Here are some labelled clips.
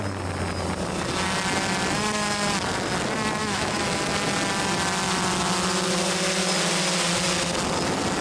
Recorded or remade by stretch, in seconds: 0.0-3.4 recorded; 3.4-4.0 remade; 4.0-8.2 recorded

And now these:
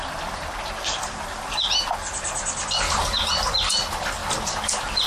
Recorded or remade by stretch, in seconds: 0.0-5.1 recorded

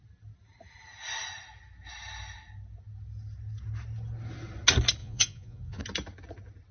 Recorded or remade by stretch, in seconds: 0.0-5.0 recorded; 5.0-5.8 remade; 5.8-6.7 recorded

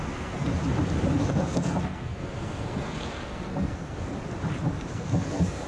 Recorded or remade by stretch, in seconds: 0.0-0.5 remade; 0.5-1.2 recorded; 1.2-4.1 remade; 4.1-4.9 recorded; 4.9-5.7 remade

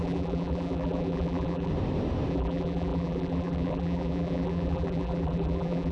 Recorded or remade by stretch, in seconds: 0.0-1.7 remade; 1.7-2.3 recorded; 2.3-5.9 remade

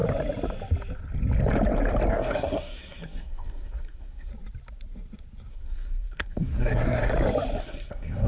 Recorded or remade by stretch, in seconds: 0.0-2.1 recorded; 2.1-4.3 remade; 4.3-5.5 recorded; 5.5-7.1 remade; 7.1-7.6 recorded; 7.6-8.3 remade